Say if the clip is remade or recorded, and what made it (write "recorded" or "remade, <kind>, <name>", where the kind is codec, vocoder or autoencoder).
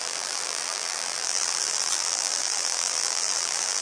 remade, vocoder, BigVGAN v2